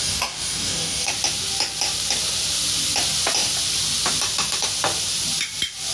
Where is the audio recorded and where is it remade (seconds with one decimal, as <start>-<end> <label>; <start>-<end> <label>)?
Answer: 0.0-1.1 remade; 1.1-5.9 recorded